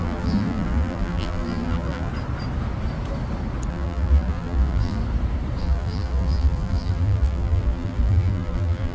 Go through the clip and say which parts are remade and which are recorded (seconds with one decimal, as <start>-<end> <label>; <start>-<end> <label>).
0.0-2.1 remade; 2.1-3.7 recorded; 3.7-5.0 remade; 5.0-5.6 recorded; 5.6-8.9 remade